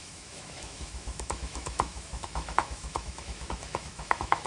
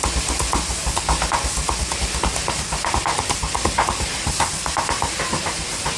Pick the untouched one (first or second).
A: second